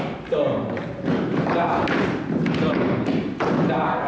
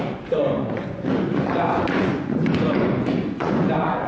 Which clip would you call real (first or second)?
first